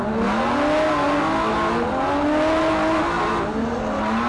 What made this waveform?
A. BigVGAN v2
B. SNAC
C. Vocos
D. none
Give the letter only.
D